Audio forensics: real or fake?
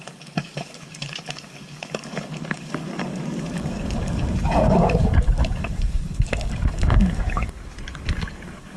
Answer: fake